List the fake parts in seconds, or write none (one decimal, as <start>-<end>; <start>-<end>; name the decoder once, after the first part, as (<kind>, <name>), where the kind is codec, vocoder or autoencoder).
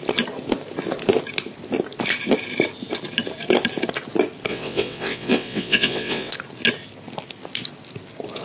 4.5-6.3 (vocoder, WaveNeXt)